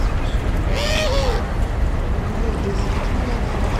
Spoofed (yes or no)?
no